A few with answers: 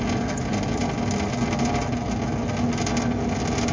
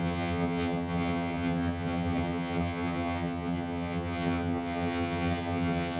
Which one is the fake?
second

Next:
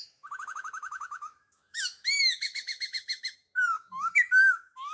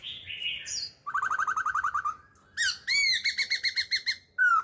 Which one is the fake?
first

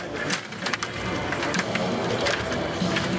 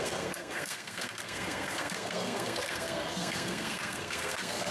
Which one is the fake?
second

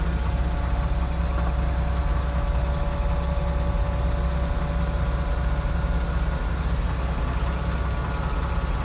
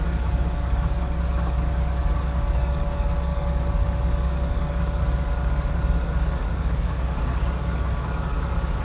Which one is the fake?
second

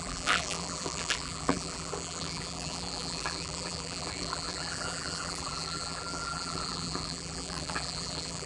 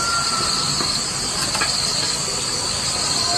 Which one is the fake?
first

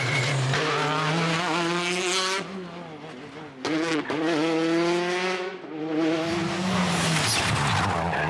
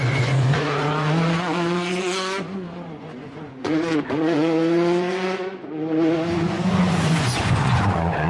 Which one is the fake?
second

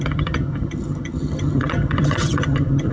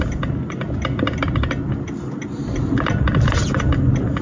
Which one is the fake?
first